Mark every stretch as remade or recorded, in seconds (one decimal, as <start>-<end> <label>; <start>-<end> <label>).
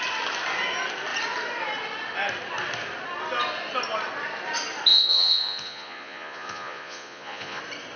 0.0-4.9 recorded; 4.9-7.6 remade; 7.6-8.0 recorded